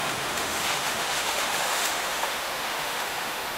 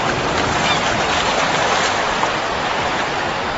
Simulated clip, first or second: first